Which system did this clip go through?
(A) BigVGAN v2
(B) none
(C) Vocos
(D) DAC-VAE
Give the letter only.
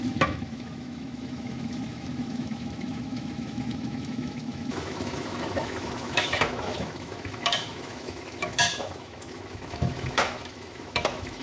D